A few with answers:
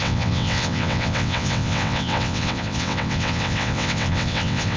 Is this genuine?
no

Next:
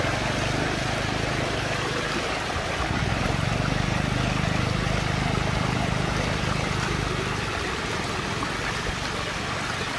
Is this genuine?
yes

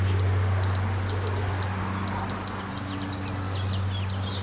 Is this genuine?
yes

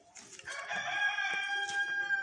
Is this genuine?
yes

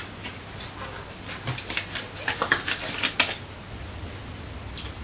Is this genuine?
yes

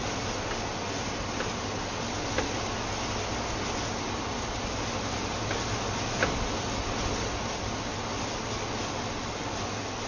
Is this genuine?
yes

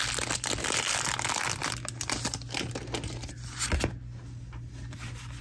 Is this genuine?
yes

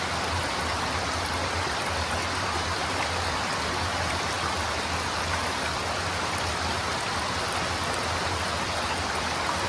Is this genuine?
yes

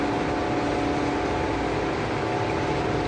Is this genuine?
yes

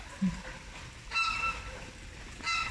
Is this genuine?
yes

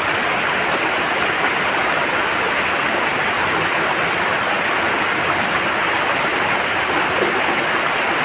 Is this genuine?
yes